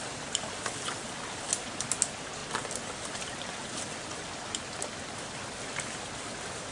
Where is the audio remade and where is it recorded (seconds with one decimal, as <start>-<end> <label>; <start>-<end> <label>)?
0.0-6.7 recorded